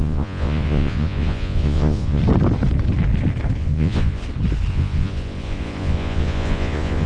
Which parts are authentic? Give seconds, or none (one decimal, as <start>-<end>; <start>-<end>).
2.2-3.6; 4.2-4.7